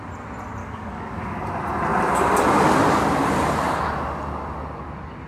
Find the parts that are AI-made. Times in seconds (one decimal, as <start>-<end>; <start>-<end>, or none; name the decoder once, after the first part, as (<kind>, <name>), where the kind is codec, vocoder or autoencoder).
0.6-1.5 (codec, DAC)